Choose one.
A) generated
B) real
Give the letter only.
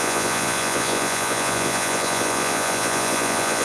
A